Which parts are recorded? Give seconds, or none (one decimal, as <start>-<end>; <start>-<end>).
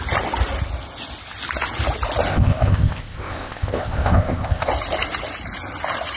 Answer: 0.0-2.3; 4.7-6.2